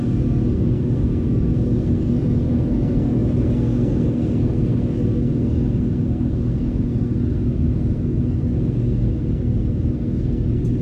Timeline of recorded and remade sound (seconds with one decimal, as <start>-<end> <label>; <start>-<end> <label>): 0.0-10.8 remade